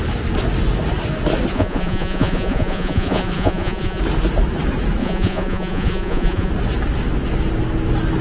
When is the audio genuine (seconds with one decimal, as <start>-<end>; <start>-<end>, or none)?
0.0-1.5; 4.0-5.0; 6.5-8.2